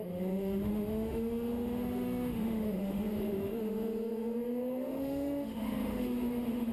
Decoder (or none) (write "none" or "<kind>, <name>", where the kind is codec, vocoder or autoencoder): autoencoder, DAC-VAE